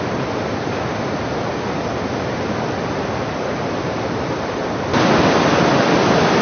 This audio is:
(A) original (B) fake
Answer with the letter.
A